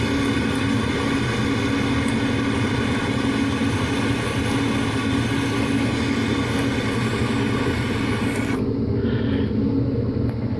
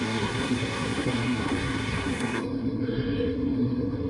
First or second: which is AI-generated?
second